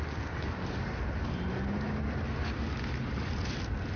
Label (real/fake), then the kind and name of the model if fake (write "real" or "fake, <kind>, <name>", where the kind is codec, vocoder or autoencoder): real